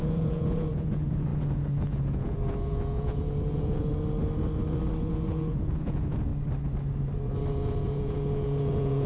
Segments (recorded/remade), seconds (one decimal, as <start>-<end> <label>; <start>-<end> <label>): 0.0-3.9 remade; 3.9-5.0 recorded; 5.0-6.3 remade; 6.3-7.5 recorded; 7.5-9.1 remade